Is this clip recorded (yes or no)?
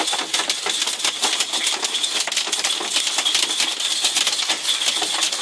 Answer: yes